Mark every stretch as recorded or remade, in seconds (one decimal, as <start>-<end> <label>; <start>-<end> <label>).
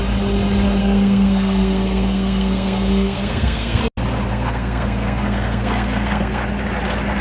0.0-0.8 recorded; 0.8-3.8 remade; 3.8-4.3 recorded; 4.3-6.4 remade; 6.4-7.2 recorded